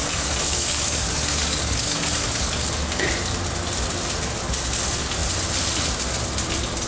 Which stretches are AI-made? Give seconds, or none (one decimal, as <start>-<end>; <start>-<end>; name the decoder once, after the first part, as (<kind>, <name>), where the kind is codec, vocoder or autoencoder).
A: 0.0-3.1 (codec, DAC)